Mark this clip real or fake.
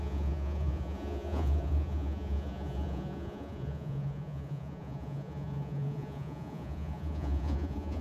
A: fake